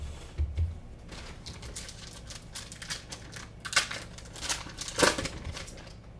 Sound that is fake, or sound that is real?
real